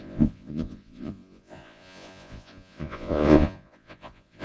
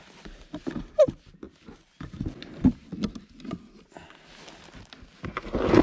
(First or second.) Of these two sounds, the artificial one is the first